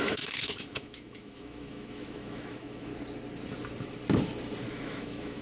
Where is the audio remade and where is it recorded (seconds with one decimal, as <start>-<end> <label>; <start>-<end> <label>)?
0.0-2.9 remade; 2.9-4.7 recorded; 4.7-5.4 remade